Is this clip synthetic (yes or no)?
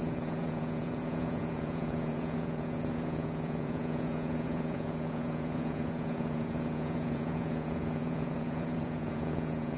yes